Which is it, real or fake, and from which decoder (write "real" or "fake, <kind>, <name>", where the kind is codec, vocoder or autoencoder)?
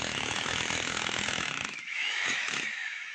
fake, autoencoder, DAC-VAE